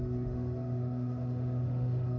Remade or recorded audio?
remade